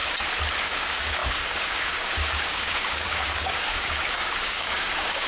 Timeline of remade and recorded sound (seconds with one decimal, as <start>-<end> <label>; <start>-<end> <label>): 0.0-0.6 recorded; 0.6-5.3 remade